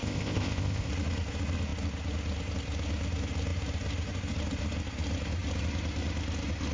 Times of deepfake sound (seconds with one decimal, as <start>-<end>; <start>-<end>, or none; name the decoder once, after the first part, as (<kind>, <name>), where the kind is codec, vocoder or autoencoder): 0.0-0.9 (codec, ZipCodec)